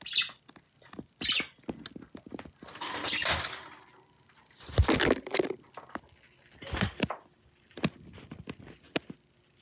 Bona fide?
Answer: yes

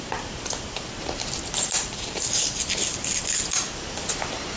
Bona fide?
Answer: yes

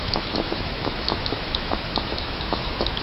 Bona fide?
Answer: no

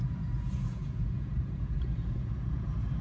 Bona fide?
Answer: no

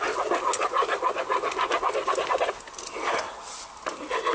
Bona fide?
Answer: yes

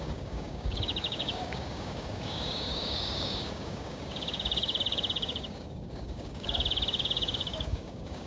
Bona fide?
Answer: no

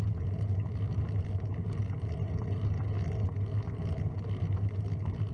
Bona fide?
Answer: yes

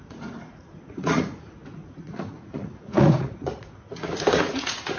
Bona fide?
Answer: no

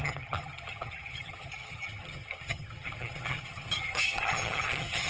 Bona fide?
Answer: no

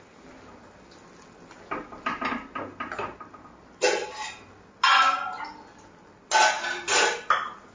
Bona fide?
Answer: yes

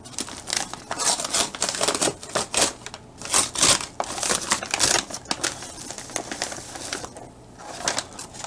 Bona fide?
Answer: yes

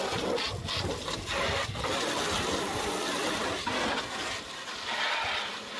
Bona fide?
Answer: yes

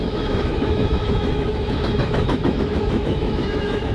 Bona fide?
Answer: no